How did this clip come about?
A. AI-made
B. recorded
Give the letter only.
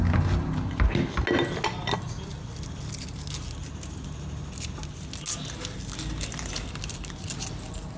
B